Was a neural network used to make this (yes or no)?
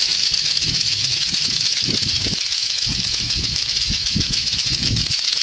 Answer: yes